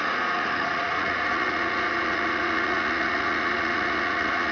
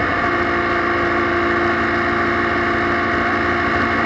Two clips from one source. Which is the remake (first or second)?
first